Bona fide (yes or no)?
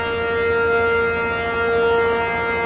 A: yes